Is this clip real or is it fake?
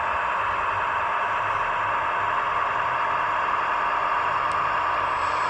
real